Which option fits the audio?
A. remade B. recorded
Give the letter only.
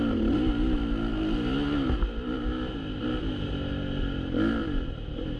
B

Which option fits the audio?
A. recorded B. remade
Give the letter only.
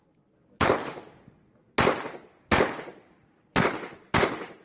A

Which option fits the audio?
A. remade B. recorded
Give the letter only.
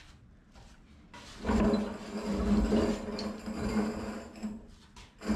B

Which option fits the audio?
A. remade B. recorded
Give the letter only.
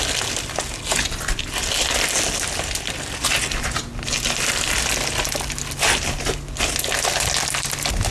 B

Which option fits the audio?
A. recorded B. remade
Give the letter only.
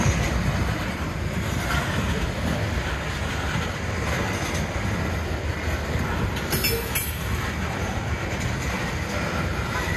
A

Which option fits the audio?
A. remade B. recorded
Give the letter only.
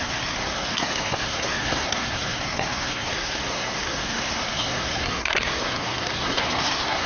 A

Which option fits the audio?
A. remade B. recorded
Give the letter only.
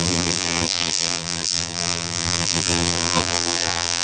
A